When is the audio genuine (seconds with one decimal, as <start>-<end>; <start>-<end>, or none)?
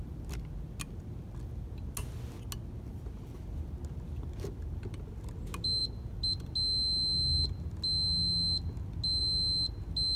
0.0-10.2